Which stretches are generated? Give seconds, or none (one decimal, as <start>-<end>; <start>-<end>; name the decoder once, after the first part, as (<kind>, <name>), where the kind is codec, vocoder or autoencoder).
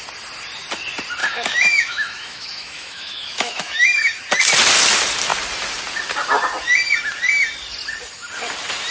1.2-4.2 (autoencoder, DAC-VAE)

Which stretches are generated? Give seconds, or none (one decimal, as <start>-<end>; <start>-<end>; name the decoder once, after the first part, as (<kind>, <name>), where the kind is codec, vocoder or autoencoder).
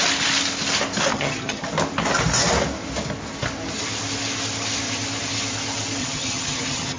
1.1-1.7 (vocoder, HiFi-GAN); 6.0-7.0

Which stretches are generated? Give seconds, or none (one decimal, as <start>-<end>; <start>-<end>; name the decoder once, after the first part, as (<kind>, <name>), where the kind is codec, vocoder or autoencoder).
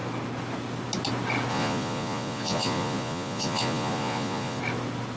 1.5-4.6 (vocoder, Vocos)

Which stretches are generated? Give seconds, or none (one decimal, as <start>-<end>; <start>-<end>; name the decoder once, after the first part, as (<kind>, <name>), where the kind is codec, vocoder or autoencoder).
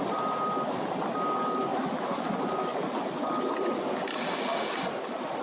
1.7-2.3 (vocoder, BigVGAN v2); 2.7-3.4